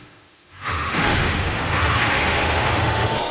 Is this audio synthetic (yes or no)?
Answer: yes